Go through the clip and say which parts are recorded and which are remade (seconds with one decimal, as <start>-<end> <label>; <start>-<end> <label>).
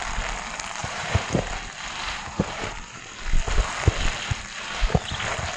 0.0-0.8 recorded; 0.8-1.5 remade; 1.5-2.0 recorded; 2.0-3.0 remade; 3.0-5.6 recorded